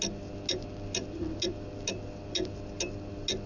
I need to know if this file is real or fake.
real